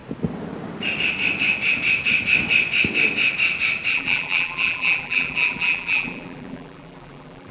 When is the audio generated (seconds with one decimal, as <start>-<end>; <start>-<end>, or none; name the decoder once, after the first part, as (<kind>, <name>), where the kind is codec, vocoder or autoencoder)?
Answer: 3.9-7.5 (vocoder, BigVGAN v2)